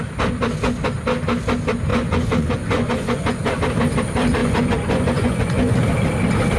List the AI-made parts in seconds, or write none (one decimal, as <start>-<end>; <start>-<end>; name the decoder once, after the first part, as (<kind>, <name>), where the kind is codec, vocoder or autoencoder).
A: 1.9-3.5 (vocoder, Vocos); 4.4-5.8